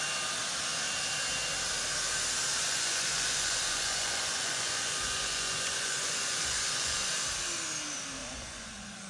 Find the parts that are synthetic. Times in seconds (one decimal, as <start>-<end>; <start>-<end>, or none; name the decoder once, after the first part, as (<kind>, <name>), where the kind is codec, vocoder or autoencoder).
2.6-7.1 (vocoder, Vocos); 8.2-9.1